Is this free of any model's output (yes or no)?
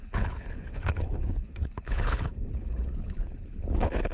no